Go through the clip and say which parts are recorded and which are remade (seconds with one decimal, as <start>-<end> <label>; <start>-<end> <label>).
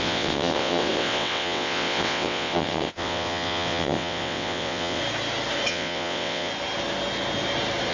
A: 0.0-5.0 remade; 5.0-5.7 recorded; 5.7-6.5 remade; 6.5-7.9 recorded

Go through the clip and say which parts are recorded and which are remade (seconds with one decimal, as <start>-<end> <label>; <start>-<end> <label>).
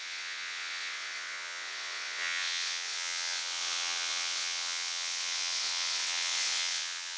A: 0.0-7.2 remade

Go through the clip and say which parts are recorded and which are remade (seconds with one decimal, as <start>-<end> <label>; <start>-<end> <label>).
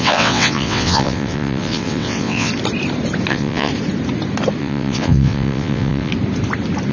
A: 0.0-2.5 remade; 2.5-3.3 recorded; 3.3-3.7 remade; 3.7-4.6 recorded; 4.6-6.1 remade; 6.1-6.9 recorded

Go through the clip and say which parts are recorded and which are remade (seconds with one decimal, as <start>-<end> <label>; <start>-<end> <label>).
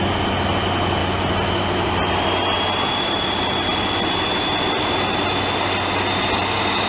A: 0.0-6.9 recorded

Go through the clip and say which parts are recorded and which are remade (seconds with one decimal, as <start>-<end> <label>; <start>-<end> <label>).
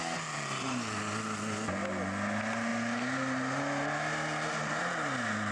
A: 0.0-5.5 recorded